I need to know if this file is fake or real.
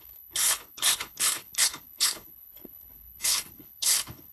fake